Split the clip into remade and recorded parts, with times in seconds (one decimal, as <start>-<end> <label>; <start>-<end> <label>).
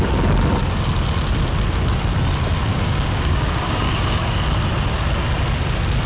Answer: 0.0-2.7 recorded; 2.7-4.2 remade; 4.2-6.1 recorded